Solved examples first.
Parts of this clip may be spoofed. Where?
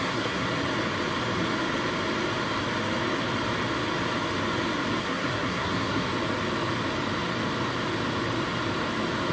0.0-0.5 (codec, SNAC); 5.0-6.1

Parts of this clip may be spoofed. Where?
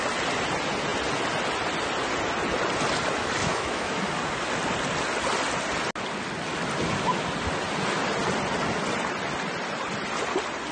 3.4-4.0 (autoencoder, DAC-VAE)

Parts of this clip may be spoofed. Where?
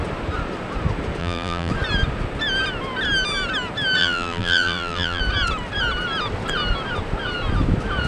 1.2-1.7 (vocoder, BigVGAN v2); 4.0-5.2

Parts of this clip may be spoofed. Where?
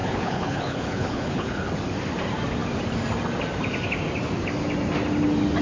0.0-1.7 (codec, HILCodec)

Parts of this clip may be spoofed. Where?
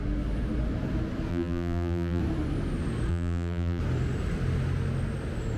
1.3-2.2 (vocoder, BigVGAN v2); 3.1-3.8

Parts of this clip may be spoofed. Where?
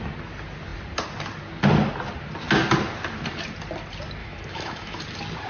4.2-5.0 (autoencoder, DAC-VAE)